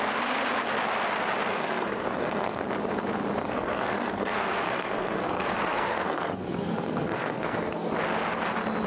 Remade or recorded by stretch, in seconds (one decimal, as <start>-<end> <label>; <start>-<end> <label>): 0.0-1.5 recorded; 1.5-2.6 remade; 2.6-3.4 recorded; 3.4-7.9 remade; 7.9-8.9 recorded